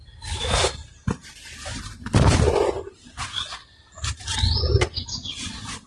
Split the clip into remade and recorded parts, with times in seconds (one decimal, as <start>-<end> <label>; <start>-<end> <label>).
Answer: 0.0-0.9 recorded; 0.9-3.1 remade; 3.1-5.9 recorded